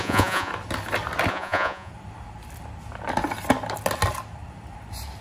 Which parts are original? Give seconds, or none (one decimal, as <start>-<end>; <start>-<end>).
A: 0.5-1.3; 1.9-5.2